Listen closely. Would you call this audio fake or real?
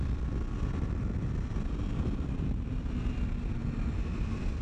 real